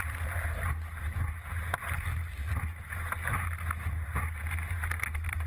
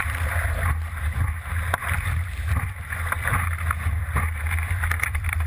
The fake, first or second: second